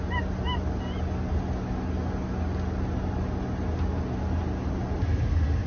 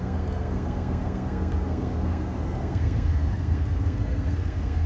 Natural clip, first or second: first